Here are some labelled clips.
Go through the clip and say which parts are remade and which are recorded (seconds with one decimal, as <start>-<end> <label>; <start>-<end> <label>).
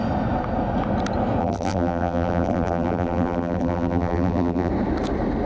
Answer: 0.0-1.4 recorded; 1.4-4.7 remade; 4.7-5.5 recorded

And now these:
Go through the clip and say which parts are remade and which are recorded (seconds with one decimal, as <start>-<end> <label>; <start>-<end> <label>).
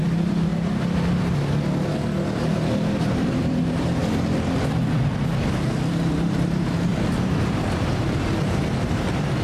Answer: 0.0-0.5 remade; 0.5-3.0 recorded; 3.0-4.0 remade; 4.0-5.9 recorded; 5.9-9.4 remade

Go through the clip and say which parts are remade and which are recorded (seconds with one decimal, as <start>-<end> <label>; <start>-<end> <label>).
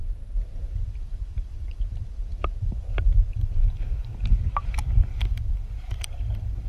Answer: 0.0-0.6 recorded; 0.6-6.7 remade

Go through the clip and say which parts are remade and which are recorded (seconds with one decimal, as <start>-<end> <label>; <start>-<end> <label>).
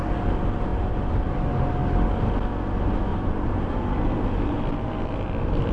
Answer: 0.0-0.7 recorded; 0.7-1.3 remade; 1.3-3.1 recorded; 3.1-4.6 remade; 4.6-5.7 recorded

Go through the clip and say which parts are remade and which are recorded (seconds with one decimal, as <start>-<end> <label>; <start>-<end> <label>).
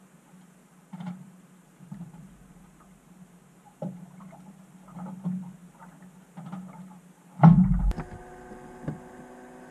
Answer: 0.0-0.6 recorded; 0.6-4.4 remade; 4.4-9.7 recorded